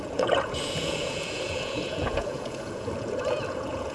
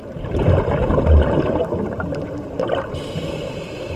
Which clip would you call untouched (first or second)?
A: second